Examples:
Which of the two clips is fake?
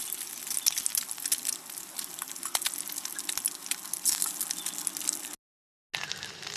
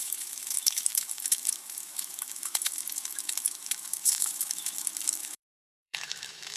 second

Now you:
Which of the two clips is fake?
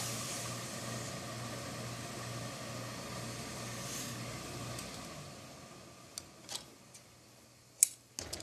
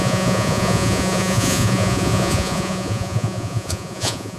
second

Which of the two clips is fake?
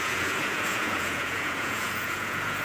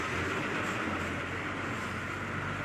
first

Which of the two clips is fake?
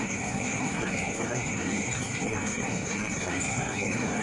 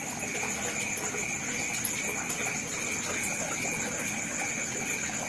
first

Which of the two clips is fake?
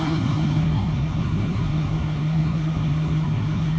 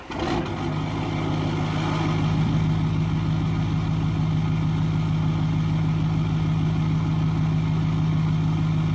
first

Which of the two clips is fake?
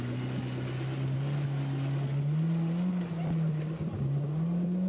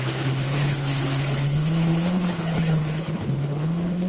second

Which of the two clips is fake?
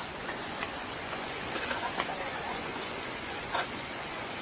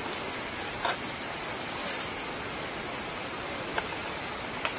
first